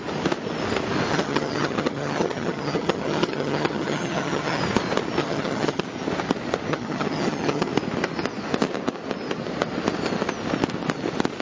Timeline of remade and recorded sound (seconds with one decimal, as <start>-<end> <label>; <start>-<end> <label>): 0.0-1.1 recorded; 1.1-4.6 remade; 4.6-5.2 recorded; 5.2-5.8 remade; 5.8-6.7 recorded; 6.7-7.7 remade; 7.7-11.4 recorded